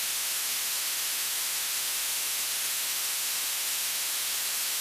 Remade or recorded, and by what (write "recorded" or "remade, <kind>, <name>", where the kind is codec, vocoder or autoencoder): remade, autoencoder, DAC-VAE